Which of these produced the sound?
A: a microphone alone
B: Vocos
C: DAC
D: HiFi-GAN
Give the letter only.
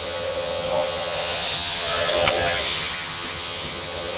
D